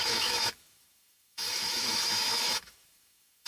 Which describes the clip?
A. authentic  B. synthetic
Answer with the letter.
B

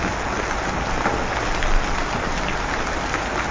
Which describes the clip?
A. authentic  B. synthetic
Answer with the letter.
A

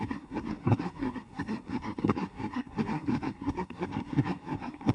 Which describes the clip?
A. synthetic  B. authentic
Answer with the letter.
A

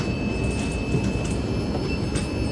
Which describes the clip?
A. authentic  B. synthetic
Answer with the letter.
A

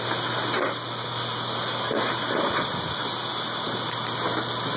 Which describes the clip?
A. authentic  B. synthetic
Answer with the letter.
A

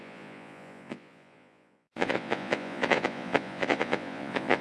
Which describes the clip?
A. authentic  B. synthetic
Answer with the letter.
B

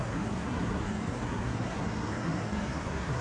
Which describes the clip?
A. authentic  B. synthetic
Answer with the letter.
B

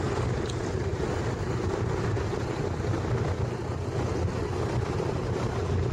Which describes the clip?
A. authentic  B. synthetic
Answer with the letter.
A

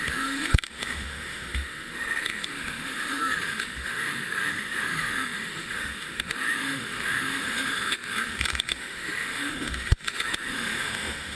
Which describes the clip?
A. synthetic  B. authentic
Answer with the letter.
A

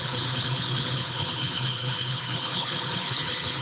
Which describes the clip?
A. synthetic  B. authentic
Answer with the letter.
A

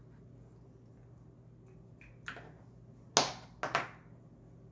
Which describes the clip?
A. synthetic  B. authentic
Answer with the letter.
B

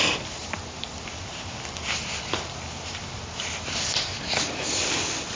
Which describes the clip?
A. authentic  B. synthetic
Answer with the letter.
B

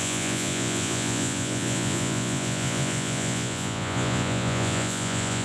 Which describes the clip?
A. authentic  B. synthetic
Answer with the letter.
B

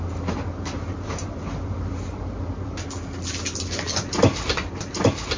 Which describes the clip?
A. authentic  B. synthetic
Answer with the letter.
A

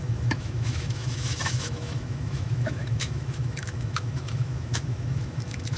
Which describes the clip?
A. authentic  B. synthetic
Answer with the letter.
B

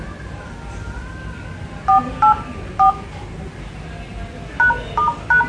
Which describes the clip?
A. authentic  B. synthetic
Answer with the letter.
A